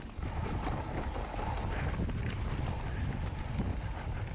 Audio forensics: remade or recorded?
recorded